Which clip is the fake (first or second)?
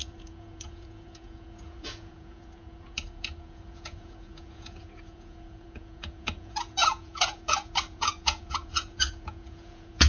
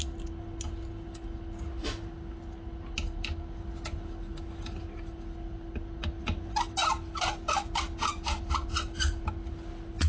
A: first